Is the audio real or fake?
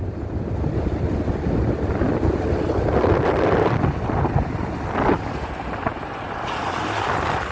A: real